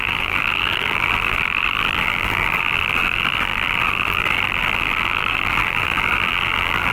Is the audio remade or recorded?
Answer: remade